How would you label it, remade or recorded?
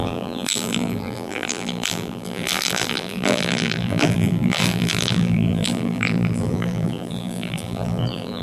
remade